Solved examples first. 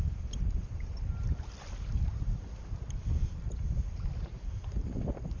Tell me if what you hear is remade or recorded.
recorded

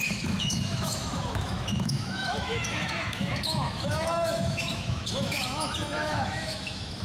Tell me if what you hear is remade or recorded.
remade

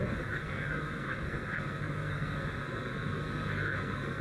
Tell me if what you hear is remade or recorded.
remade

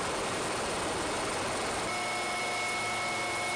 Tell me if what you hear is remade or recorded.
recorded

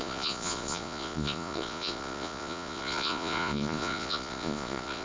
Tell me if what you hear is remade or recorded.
remade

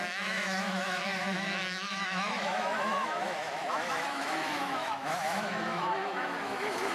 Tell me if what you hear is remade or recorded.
remade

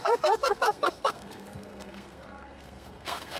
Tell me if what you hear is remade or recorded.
remade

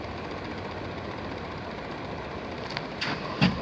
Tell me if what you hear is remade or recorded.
recorded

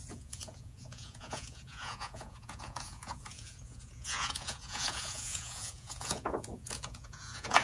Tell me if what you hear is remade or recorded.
remade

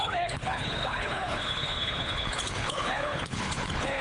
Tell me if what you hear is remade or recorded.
remade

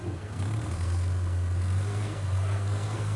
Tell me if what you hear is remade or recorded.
remade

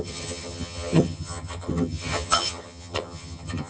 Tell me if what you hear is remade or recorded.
remade